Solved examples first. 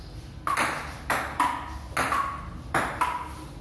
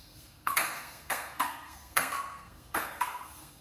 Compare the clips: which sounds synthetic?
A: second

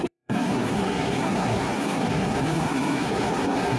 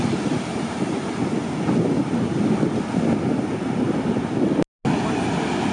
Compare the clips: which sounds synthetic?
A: first